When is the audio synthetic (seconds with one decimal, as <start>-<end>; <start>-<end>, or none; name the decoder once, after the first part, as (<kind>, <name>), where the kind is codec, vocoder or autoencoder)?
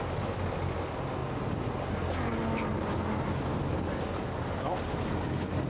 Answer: none